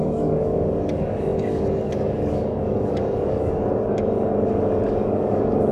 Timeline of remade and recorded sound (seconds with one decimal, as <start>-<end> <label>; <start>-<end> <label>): 0.0-5.7 remade